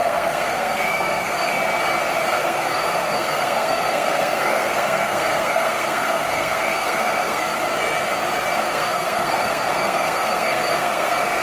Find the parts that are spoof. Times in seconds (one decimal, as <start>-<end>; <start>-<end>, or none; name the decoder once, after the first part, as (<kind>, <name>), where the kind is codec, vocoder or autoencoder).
0.0-1.5 (codec, SNAC); 2.3-7.5; 8.6-11.4